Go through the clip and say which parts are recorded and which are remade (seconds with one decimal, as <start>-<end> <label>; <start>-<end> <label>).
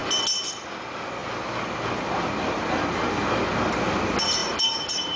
0.0-4.4 recorded; 4.4-5.2 remade